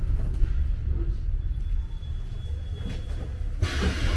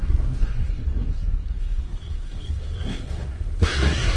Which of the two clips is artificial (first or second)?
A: second